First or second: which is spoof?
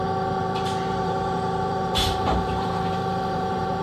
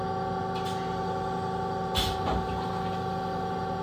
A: first